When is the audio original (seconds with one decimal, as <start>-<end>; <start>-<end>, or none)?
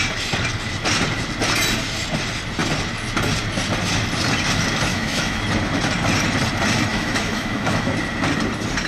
0.0-4.9; 5.4-6.9; 7.9-8.9